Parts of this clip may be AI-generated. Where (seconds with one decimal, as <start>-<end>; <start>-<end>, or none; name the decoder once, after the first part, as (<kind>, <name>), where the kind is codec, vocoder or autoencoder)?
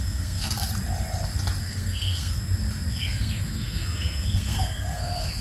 0.0-0.7 (codec, SNAC); 1.6-2.4; 2.9-5.4